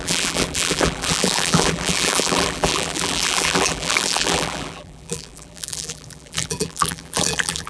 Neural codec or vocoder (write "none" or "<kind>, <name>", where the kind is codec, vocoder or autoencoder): vocoder, BigVGAN v2